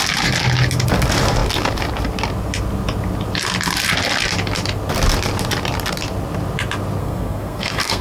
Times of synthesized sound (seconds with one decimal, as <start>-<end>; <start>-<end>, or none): 7.0-8.0